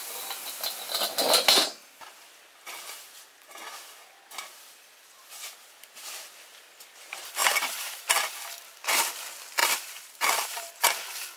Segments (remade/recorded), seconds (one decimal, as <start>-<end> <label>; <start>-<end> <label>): 0.0-7.4 recorded; 7.4-8.1 remade; 8.1-9.6 recorded; 9.6-10.7 remade; 10.7-11.4 recorded